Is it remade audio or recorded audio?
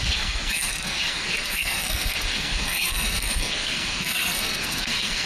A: remade